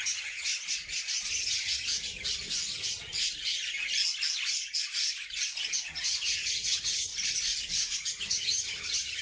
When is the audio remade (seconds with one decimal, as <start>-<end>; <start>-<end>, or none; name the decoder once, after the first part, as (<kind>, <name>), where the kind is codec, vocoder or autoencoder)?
0.0-0.5 (vocoder, HiFi-GAN); 1.3-1.9; 5.9-7.1; 8.2-9.2